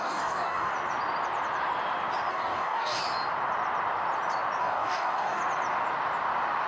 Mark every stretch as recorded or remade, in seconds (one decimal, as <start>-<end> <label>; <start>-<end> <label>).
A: 0.0-0.7 remade; 0.7-2.3 recorded; 2.3-3.0 remade; 3.0-4.6 recorded; 4.6-5.4 remade; 5.4-6.7 recorded